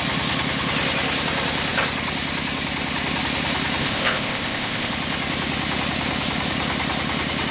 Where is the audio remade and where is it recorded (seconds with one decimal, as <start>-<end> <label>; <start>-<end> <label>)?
0.0-3.8 recorded; 3.8-4.9 remade; 4.9-7.5 recorded